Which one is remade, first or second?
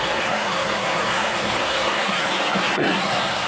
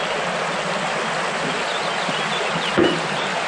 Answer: first